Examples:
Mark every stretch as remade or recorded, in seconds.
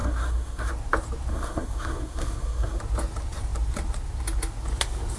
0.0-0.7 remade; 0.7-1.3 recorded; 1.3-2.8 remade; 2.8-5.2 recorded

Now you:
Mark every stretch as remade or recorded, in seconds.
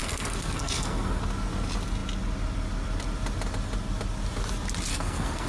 0.0-1.2 remade; 1.2-4.9 recorded; 4.9-5.5 remade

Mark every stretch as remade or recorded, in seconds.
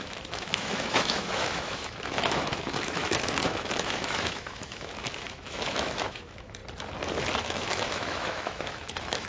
0.0-6.6 remade; 6.6-7.4 recorded; 7.4-9.3 remade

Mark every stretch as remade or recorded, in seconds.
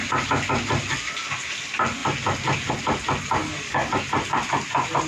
0.0-3.4 recorded; 3.4-3.9 remade; 3.9-5.1 recorded